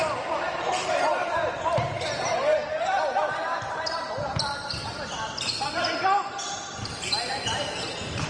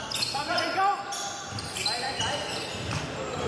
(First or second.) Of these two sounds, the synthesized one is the first